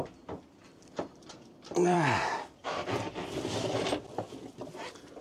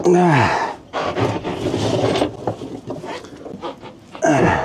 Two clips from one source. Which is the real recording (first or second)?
second